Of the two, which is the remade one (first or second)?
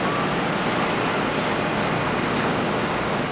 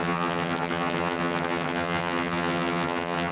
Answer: second